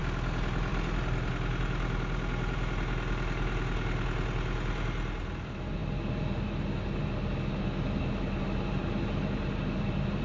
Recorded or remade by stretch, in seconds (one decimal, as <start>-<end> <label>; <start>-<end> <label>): 0.0-10.2 recorded